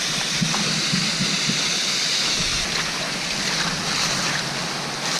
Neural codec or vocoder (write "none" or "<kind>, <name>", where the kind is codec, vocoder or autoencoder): none